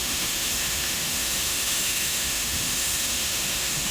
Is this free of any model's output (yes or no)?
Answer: no